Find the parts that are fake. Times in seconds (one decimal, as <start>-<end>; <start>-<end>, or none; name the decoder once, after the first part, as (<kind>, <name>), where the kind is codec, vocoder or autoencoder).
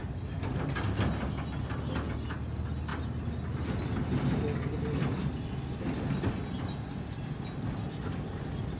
none